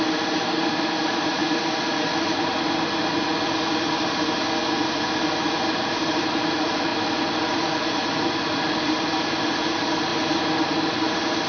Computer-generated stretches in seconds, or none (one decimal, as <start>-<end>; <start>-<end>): 0.0-1.4; 5.7-10.1; 10.6-11.5